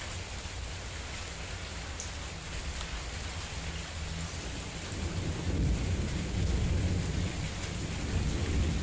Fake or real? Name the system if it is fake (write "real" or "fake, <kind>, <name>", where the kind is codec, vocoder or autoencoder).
real